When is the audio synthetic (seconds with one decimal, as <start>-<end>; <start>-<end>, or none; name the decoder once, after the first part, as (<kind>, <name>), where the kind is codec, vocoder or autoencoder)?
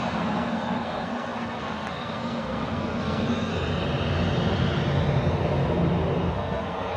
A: 0.0-3.5 (codec, SNAC); 6.3-7.0